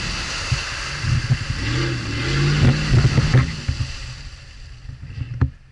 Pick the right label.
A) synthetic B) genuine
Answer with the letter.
B